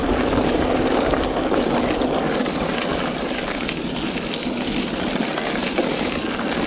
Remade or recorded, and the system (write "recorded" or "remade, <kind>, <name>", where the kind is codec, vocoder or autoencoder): recorded